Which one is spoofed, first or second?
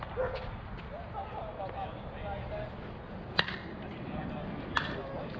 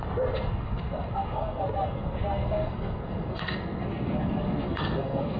second